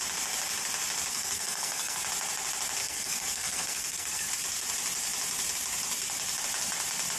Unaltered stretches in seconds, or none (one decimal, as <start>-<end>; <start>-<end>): 0.0-1.1; 2.0-2.8; 4.3-7.2